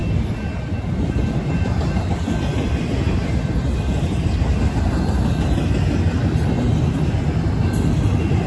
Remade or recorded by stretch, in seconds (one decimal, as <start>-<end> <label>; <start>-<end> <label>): 0.0-8.5 recorded